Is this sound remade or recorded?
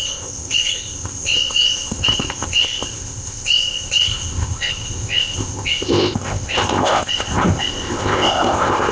remade